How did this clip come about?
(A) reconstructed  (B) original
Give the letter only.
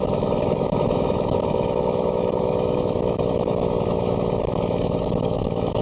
A